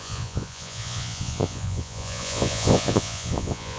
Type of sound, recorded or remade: remade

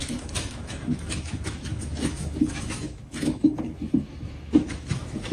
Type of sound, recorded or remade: remade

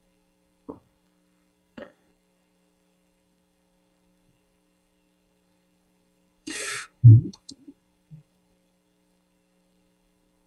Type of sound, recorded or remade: remade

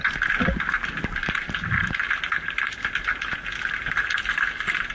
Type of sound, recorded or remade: recorded